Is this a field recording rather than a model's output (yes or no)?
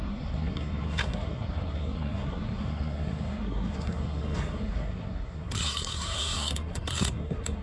no